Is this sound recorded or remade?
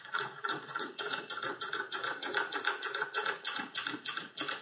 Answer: remade